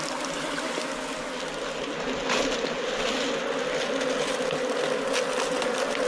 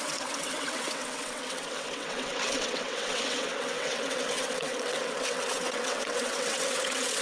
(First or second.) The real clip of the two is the first